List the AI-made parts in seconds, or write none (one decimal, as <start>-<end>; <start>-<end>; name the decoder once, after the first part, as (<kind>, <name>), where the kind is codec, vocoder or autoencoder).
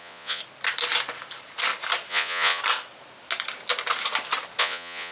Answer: 0.0-0.4 (vocoder, Vocos); 2.1-2.6; 4.6-5.1